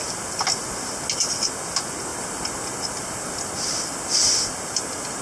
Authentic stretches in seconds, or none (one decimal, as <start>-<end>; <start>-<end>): 0.0-5.2